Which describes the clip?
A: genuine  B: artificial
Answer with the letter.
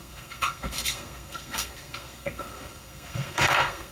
B